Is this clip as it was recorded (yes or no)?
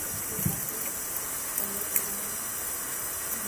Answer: yes